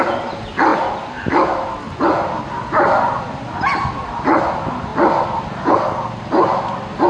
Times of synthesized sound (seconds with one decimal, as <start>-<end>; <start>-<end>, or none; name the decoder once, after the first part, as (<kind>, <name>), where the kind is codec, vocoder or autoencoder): none